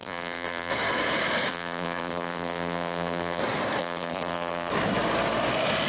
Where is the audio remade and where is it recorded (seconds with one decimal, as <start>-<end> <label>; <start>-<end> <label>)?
0.0-0.7 remade; 0.7-1.5 recorded; 1.5-3.4 remade; 3.4-3.8 recorded; 3.8-4.7 remade; 4.7-5.9 recorded